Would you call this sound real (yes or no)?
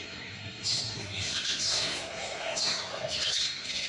no